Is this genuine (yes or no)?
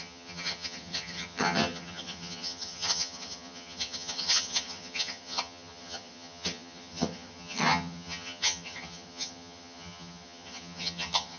no